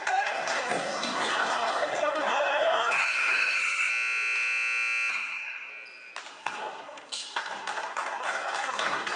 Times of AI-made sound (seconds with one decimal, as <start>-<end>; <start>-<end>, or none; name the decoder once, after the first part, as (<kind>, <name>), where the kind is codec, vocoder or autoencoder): 0.0-3.9 (codec, SNAC); 5.1-5.7; 6.3-9.2